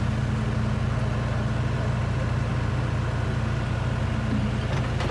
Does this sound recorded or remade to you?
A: recorded